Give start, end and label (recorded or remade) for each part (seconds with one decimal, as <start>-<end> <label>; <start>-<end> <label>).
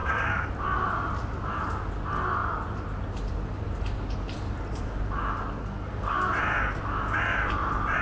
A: 0.0-0.5 remade; 0.5-5.6 recorded; 5.6-6.3 remade; 6.3-8.0 recorded